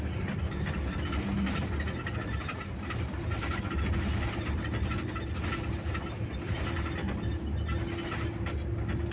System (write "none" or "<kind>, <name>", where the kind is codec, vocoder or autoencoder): none